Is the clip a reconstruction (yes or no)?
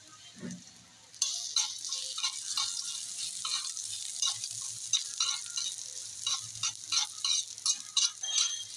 no